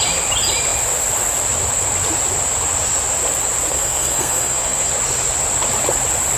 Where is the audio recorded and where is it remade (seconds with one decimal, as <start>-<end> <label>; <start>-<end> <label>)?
0.0-3.7 recorded; 3.7-4.9 remade; 4.9-6.4 recorded